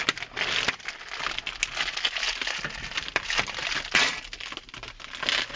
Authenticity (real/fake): real